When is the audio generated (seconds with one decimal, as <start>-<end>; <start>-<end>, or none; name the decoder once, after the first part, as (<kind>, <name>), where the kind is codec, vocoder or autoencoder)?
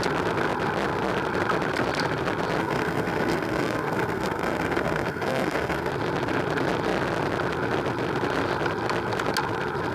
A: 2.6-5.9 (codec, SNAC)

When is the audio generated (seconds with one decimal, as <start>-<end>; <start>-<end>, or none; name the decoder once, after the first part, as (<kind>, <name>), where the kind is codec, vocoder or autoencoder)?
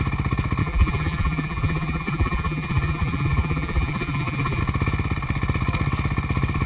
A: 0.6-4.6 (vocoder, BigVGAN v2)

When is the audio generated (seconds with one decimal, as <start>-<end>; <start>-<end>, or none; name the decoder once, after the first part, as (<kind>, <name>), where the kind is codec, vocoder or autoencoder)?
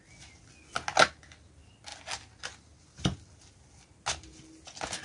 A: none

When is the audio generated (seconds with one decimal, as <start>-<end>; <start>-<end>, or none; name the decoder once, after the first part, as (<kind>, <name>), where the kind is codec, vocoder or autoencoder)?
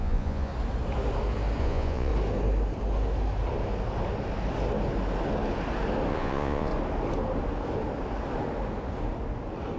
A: 0.0-0.5 (vocoder, Vocos); 1.6-2.1; 6.1-6.7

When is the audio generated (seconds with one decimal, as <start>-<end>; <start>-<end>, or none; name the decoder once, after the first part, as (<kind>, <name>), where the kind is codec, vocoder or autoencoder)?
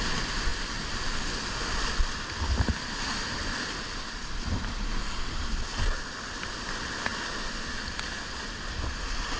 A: none